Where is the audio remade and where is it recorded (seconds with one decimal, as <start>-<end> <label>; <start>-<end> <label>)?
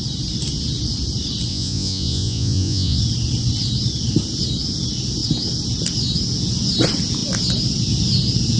0.0-1.5 recorded; 1.5-3.0 remade; 3.0-8.6 recorded